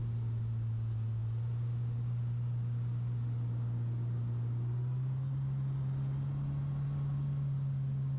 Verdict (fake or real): real